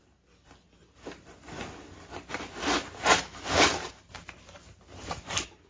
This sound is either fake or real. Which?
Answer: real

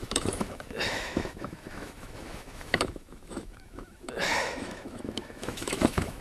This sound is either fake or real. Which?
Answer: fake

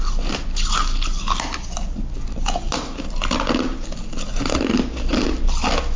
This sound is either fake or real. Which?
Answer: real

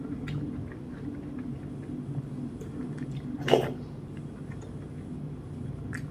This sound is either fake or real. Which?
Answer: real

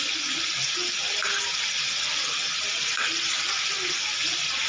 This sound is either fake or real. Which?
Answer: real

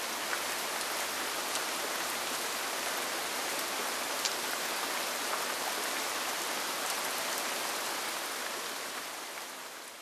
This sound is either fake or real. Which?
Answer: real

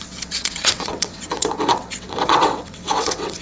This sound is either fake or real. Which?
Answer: fake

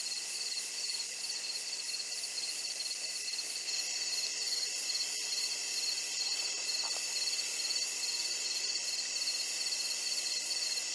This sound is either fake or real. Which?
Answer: real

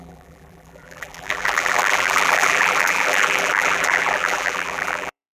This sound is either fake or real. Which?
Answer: fake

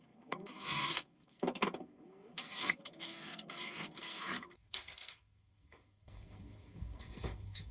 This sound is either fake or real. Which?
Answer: fake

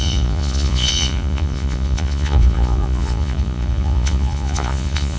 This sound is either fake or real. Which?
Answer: fake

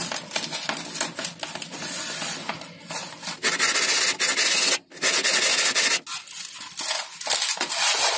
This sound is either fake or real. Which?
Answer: real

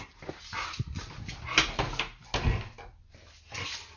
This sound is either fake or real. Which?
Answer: real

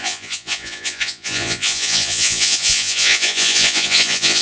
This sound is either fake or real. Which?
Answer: fake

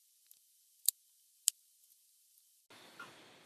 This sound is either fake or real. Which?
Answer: real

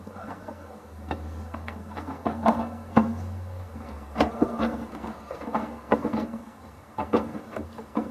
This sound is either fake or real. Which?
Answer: fake